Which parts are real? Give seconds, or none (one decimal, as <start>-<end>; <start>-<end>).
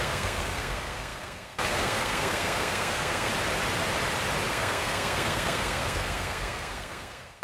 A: 3.3-4.5